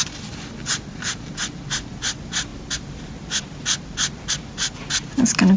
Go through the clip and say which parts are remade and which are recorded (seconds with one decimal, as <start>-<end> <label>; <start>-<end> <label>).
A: 0.0-5.6 recorded